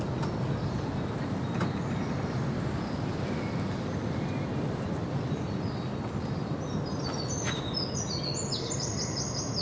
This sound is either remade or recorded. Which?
recorded